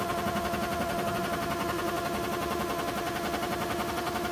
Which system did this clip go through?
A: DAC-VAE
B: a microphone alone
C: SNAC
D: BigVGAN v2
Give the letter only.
B